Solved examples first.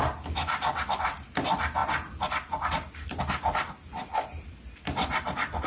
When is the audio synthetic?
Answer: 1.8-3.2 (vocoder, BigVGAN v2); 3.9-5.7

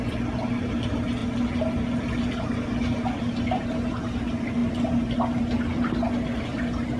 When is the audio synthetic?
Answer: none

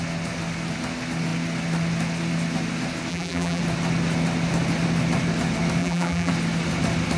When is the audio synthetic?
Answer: 3.1-3.6 (vocoder, BigVGAN v2); 5.8-6.3